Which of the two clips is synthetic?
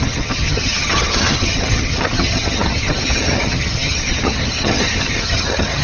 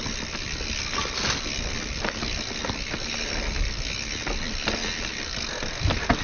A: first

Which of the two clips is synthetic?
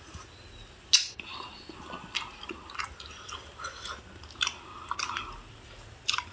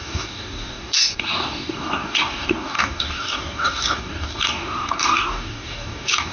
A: second